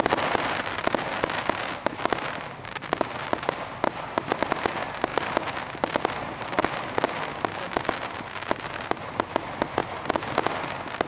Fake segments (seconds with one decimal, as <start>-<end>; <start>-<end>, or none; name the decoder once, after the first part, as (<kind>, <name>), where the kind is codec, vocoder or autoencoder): none